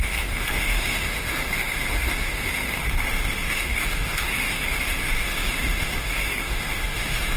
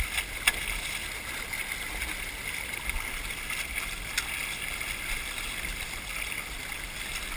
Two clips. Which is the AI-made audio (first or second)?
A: first